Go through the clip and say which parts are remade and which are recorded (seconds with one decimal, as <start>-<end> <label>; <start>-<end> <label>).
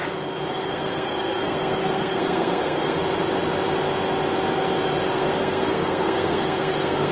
0.0-0.5 recorded; 0.5-3.0 remade; 3.0-5.1 recorded; 5.1-7.1 remade